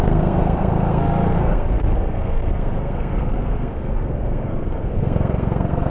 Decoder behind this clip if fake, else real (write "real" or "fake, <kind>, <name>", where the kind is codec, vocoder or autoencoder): fake, codec, SNAC